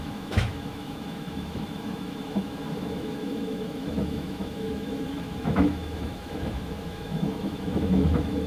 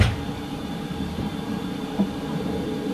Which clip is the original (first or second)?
second